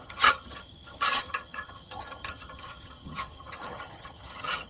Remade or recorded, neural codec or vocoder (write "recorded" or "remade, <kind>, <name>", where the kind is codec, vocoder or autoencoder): remade, vocoder, HiFi-GAN